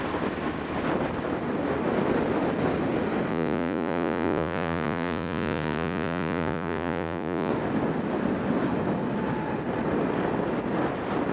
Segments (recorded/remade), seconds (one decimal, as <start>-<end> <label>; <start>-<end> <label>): 0.0-3.3 recorded; 3.3-7.5 remade; 7.5-11.3 recorded